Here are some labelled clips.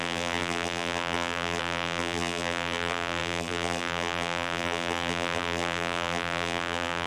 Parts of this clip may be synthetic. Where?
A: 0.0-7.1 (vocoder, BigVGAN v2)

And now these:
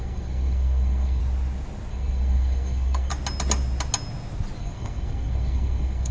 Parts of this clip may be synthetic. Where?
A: 0.0-1.2 (codec, SNAC); 1.9-3.1; 4.6-6.1

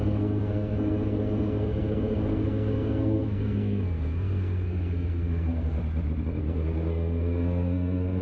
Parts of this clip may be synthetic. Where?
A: 0.0-5.8 (codec, SNAC); 6.4-8.2

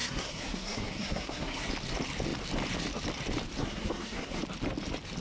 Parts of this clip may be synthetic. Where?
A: 0.0-1.7 (codec, SNAC); 3.6-4.4

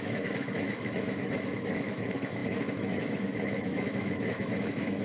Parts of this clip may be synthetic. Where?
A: 0.0-5.0 (autoencoder, DAC-VAE)

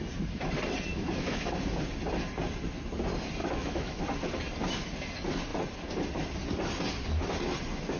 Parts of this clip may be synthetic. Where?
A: 0.9-1.6 (autoencoder, DAC-VAE); 3.4-4.0

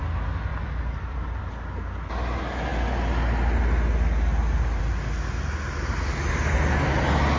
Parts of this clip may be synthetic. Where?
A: 0.5-1.4 (vocoder, BigVGAN v2)